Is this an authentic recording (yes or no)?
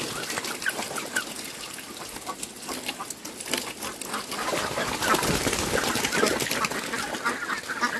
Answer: yes